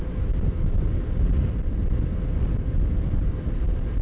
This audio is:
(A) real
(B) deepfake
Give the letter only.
A